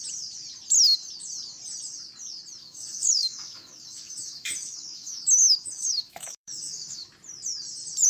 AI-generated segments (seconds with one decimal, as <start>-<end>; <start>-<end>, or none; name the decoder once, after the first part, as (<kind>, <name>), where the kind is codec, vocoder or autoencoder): 2.6-7.1 (autoencoder, DAC-VAE)